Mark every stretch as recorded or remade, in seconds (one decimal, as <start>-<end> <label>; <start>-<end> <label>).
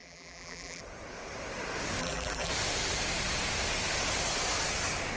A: 0.0-0.8 remade; 0.8-2.0 recorded; 2.0-2.5 remade; 2.5-5.2 recorded